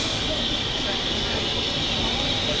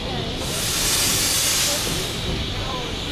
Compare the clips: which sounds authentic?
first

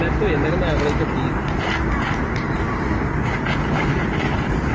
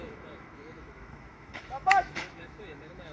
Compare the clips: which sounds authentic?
first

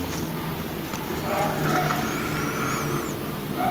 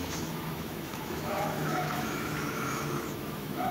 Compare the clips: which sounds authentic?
first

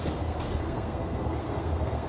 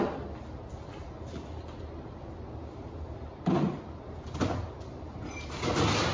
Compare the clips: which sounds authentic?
second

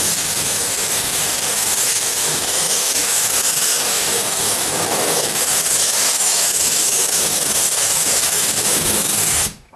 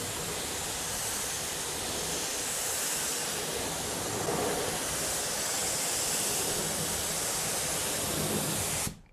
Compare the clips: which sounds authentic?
second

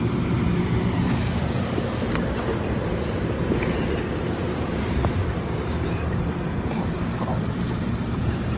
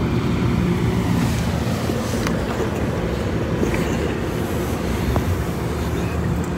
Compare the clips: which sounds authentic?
second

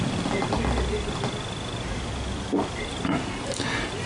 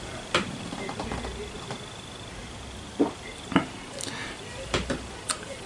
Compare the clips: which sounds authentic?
first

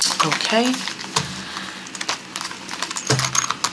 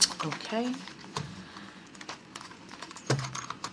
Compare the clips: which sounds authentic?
first